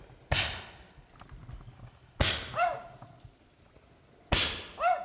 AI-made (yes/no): no